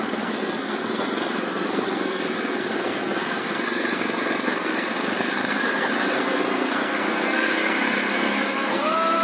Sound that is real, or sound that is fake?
fake